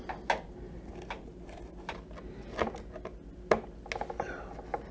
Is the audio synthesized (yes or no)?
no